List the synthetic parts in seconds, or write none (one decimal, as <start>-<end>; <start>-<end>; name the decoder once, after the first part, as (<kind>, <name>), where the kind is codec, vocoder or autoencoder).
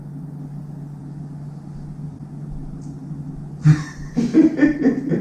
none